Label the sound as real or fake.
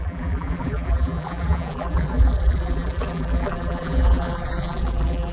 fake